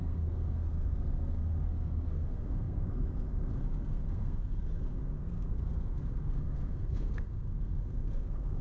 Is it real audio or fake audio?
fake